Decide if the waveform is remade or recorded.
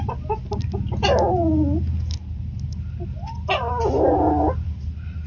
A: recorded